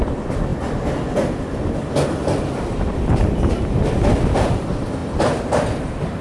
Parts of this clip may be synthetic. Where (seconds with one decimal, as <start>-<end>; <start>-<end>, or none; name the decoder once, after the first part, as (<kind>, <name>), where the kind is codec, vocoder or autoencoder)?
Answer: none